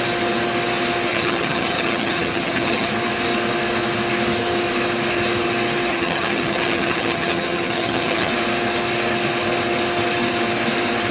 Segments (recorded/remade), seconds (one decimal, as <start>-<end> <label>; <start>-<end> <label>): 0.0-1.1 recorded; 1.1-2.9 remade; 2.9-5.9 recorded; 5.9-8.3 remade; 8.3-11.1 recorded